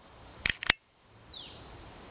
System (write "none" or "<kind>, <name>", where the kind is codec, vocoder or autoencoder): vocoder, BigVGAN v2